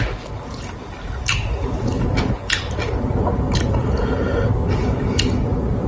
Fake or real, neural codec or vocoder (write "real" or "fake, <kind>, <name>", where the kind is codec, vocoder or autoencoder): real